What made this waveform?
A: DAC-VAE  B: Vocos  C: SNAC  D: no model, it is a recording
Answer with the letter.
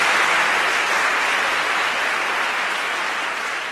D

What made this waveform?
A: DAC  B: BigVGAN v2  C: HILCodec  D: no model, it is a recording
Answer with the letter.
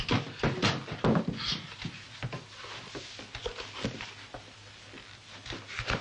D